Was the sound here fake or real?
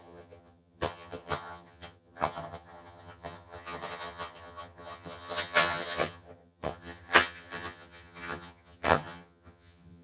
fake